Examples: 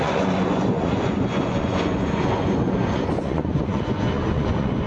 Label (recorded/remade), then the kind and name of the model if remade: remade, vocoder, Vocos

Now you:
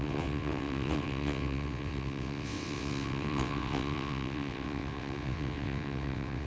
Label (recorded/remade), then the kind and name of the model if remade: remade, vocoder, WaveNeXt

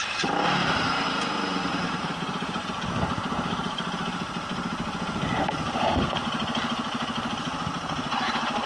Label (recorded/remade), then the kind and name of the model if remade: remade, vocoder, BigVGAN v2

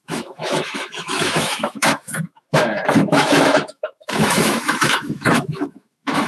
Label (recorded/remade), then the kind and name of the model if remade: remade, autoencoder, DAC-VAE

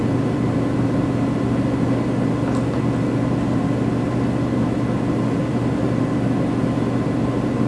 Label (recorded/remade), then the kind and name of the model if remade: recorded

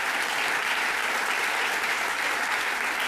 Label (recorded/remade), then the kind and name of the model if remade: recorded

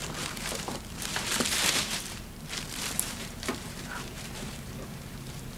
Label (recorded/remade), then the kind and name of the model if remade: remade, vocoder, BigVGAN v2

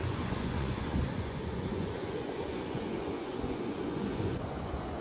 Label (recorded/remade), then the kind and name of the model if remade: remade, vocoder, Vocos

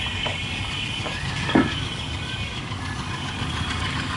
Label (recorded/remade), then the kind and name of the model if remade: remade, codec, DAC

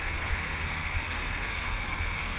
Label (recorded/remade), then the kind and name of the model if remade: remade, codec, SNAC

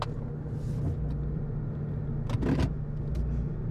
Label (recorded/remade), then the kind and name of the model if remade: recorded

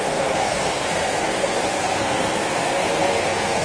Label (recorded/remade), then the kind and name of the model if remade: remade, codec, SNAC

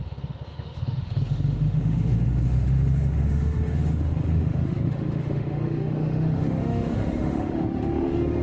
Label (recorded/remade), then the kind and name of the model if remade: remade, autoencoder, DAC-VAE